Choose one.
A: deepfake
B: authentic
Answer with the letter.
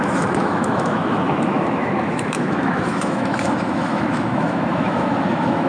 A